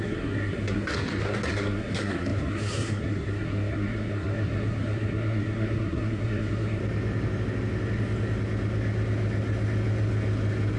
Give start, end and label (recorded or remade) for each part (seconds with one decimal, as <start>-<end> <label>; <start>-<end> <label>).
0.0-6.8 remade; 6.8-10.8 recorded